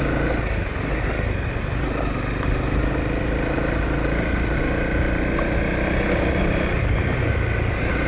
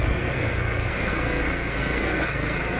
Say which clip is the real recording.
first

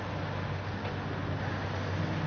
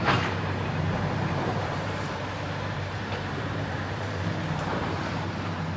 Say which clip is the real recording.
first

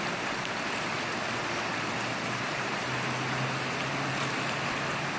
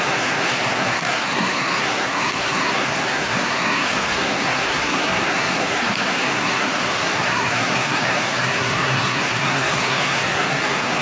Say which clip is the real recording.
first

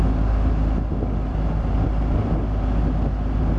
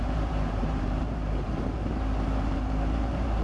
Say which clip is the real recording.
first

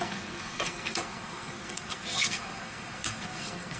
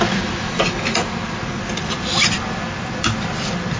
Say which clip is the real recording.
second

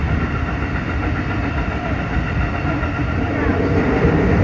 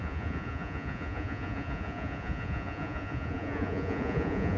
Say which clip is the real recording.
first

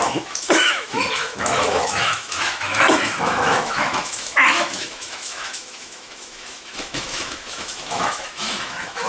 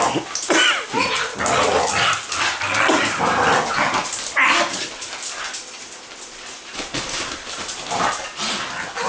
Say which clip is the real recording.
second